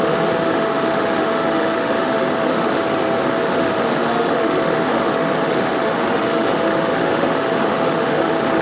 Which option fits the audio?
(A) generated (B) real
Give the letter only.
A